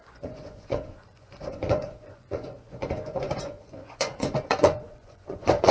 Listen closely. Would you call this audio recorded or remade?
remade